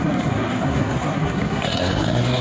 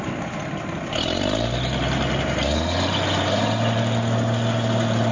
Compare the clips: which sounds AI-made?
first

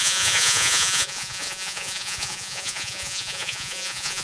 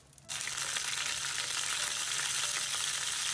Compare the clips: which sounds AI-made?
first